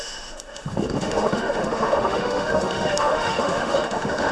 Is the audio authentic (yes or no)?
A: no